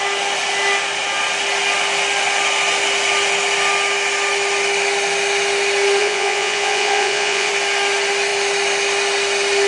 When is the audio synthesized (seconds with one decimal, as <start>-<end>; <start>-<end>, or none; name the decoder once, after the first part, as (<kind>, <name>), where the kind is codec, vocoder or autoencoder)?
6.0-7.5 (vocoder, Vocos)